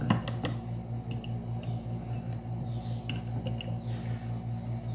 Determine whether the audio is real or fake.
real